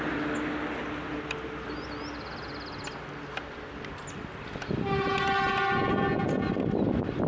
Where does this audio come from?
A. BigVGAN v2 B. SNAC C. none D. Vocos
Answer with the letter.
C